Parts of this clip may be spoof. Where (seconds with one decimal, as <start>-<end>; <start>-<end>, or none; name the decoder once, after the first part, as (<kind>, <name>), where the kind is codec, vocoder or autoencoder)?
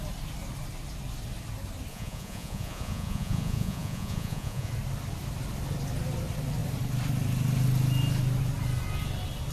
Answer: 1.9-4.7 (vocoder, Vocos)